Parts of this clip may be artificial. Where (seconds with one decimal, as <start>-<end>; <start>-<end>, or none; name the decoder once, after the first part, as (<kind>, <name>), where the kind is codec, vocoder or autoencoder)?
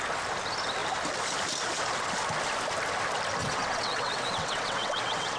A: 3.4-5.4 (vocoder, WaveNeXt)